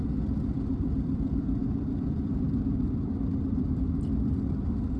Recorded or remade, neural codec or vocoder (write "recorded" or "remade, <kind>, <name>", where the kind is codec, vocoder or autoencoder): remade, vocoder, BigVGAN v2